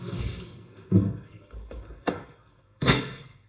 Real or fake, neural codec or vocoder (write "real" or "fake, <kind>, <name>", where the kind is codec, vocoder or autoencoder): fake, codec, SNAC